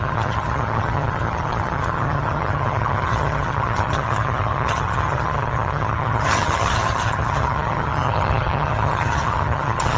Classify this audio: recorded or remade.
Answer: remade